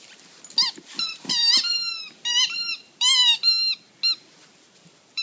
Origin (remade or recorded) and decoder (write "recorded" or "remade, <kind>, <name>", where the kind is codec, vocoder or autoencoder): recorded